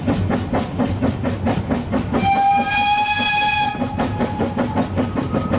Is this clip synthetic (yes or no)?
no